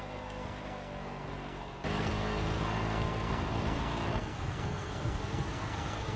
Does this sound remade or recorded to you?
remade